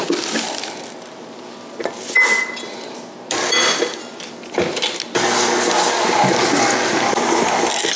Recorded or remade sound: recorded